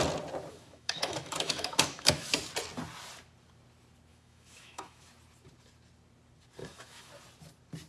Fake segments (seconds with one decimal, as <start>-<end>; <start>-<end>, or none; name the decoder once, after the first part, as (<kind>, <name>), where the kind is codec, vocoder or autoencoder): 0.5-2.3 (autoencoder, DAC-VAE); 4.1-5.1; 6.6-7.1